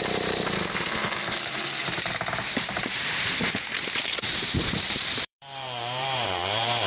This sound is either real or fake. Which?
fake